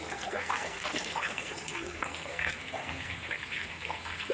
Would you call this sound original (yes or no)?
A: no